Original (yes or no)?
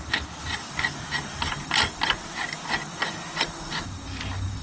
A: yes